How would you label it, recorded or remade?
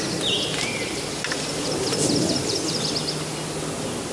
recorded